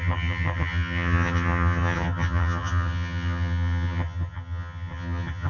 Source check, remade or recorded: remade